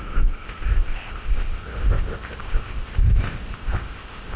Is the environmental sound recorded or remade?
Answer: remade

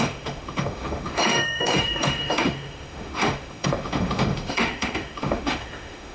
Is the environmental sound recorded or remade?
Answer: remade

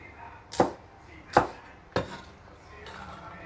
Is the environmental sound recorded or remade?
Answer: recorded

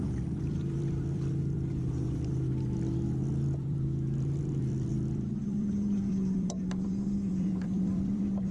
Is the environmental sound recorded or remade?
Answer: remade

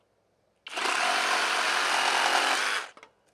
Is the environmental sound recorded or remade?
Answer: recorded